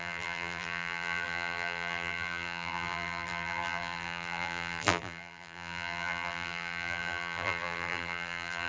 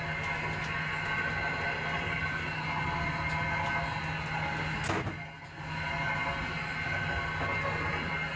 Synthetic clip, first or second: first